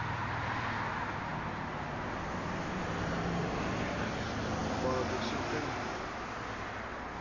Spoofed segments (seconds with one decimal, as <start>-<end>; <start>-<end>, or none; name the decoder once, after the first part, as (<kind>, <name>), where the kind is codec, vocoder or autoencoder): none